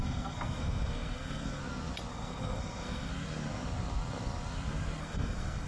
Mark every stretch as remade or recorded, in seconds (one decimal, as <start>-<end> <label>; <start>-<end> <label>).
0.0-1.6 remade; 1.6-2.1 recorded; 2.1-3.1 remade; 3.1-5.0 recorded; 5.0-5.7 remade